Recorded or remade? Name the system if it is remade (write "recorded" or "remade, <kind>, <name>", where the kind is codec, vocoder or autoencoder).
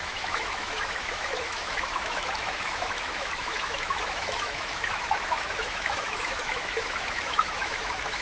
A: remade, autoencoder, DAC-VAE